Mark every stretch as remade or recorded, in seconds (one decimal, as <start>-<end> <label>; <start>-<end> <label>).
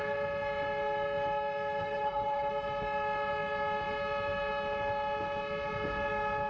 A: 0.0-1.8 recorded; 1.8-2.5 remade; 2.5-6.5 recorded